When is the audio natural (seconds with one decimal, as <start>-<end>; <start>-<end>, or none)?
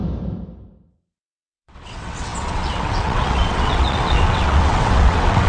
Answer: 0.0-0.9